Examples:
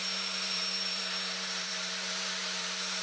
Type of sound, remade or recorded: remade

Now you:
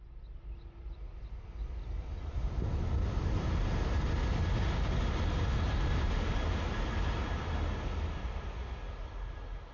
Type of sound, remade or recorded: recorded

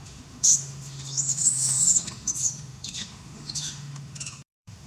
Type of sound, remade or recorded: remade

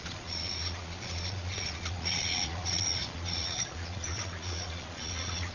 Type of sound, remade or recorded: remade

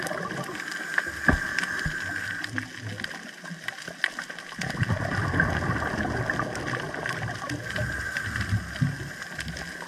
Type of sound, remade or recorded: recorded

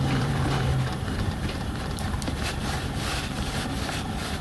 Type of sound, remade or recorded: remade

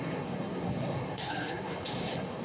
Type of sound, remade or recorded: remade